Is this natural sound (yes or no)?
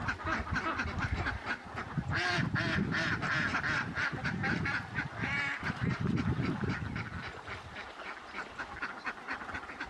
no